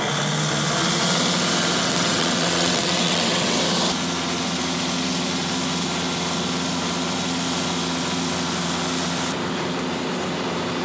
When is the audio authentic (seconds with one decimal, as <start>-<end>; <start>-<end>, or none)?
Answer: 0.0-1.8; 3.6-10.8